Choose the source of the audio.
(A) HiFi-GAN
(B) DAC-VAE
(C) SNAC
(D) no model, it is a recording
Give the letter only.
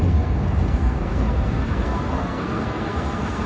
C